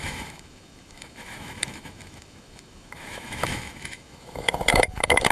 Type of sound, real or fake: fake